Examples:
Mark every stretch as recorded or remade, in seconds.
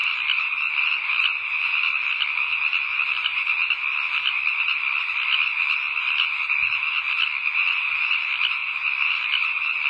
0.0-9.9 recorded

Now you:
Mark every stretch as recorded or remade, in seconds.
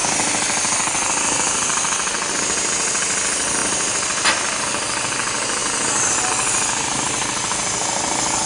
0.0-8.5 recorded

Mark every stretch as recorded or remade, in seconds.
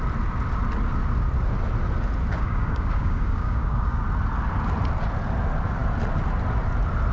0.0-2.3 recorded; 2.3-4.0 remade; 4.0-7.1 recorded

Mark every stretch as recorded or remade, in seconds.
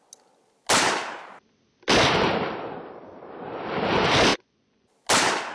0.0-4.3 recorded; 4.3-4.9 remade; 4.9-5.5 recorded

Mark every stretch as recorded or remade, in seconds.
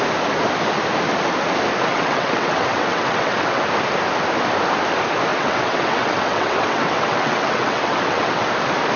0.0-1.9 recorded; 1.9-3.6 remade; 3.6-5.3 recorded; 5.3-8.5 remade; 8.5-9.0 recorded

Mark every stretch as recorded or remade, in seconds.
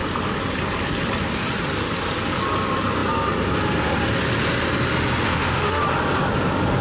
0.0-5.3 recorded; 5.3-5.8 remade; 5.8-6.8 recorded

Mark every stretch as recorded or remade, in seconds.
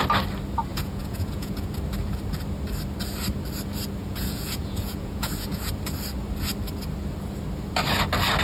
0.0-0.7 recorded; 0.7-1.7 remade; 1.7-4.0 recorded; 4.0-5.7 remade; 5.7-8.4 recorded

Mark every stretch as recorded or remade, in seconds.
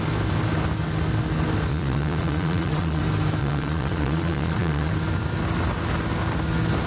0.0-1.7 recorded; 1.7-3.0 remade; 3.0-3.4 recorded; 3.4-4.9 remade; 4.9-6.9 recorded